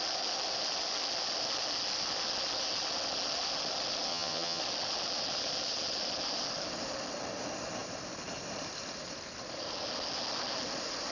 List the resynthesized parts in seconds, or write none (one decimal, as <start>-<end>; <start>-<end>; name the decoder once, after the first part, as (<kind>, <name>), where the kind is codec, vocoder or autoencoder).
4.1-4.6 (vocoder, HiFi-GAN)